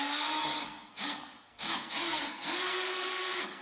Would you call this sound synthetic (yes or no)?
yes